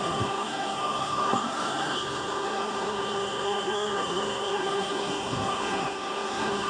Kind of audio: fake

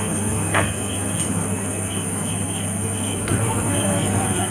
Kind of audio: fake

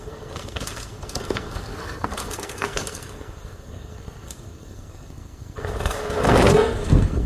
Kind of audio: fake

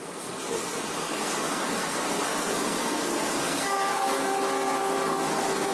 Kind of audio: fake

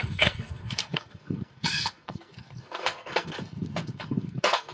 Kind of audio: fake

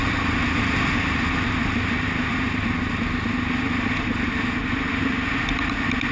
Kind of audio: real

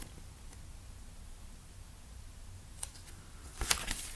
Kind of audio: real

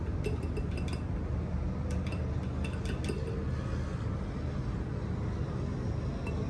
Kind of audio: real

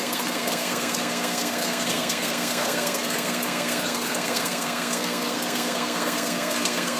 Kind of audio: fake